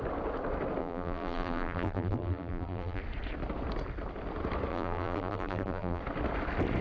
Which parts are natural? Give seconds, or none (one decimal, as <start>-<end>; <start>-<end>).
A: 0.0-0.8; 3.0-4.7; 6.0-6.8